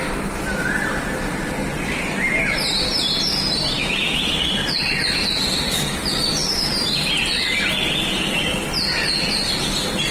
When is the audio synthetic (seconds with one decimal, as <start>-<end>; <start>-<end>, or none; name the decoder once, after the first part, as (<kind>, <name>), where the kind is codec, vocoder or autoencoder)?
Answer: 3.8-4.3 (autoencoder, DAC-VAE)